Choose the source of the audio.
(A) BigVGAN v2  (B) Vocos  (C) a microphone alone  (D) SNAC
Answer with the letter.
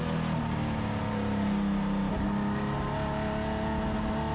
C